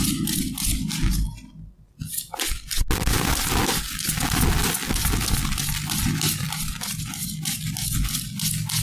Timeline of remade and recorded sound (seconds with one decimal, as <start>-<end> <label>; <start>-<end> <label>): 0.0-8.8 recorded